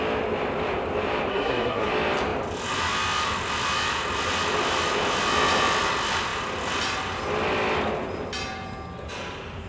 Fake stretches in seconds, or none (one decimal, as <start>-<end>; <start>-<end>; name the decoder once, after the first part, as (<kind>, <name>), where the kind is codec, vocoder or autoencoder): 1.3-1.9 (codec, SNAC)